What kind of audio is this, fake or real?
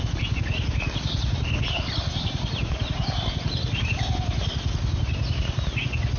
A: real